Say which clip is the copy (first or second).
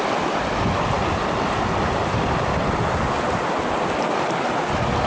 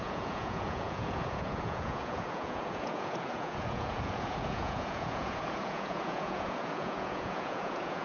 second